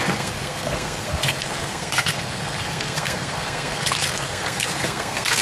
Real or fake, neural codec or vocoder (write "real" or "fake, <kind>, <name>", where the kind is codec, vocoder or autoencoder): fake, codec, SNAC